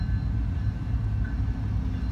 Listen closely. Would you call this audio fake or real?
real